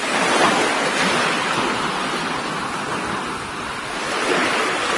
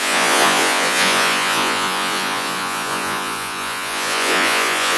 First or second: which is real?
first